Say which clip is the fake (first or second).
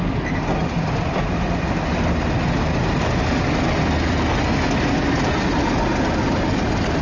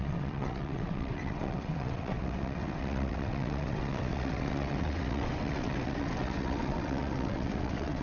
second